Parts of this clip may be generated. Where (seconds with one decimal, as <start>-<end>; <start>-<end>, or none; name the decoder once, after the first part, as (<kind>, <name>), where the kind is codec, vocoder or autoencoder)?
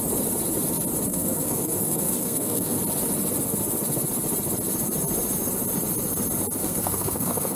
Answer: 1.1-2.8 (codec, SNAC); 6.6-7.6